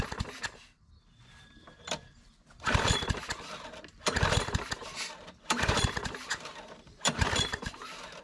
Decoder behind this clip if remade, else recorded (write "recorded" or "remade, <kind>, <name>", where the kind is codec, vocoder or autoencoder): remade, vocoder, BigVGAN v2